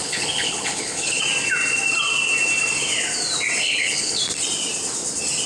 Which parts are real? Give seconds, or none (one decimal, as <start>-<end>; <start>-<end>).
1.2-3.6; 4.2-5.5